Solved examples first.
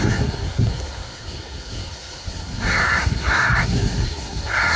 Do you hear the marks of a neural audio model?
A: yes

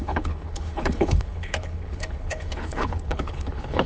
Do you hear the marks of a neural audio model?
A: yes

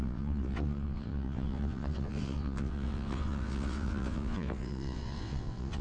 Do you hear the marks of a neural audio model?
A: yes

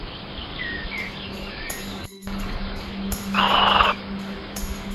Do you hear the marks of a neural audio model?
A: yes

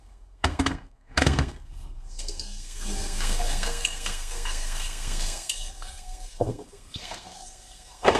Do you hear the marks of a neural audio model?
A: yes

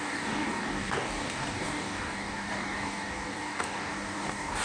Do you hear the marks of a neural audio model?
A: yes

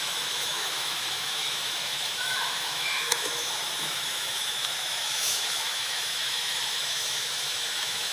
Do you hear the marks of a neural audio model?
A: yes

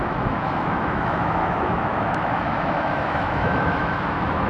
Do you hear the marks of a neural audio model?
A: yes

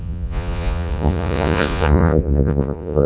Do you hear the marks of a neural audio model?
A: yes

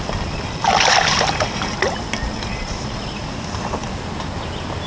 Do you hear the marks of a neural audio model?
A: no